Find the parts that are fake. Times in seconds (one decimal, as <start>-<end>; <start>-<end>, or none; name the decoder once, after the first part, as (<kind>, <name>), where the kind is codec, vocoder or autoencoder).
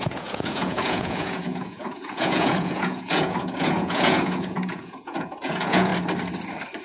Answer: 0.0-5.9 (vocoder, Vocos)